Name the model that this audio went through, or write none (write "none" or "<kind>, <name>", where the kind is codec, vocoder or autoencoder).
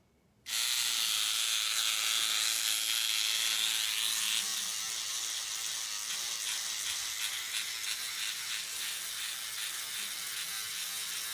none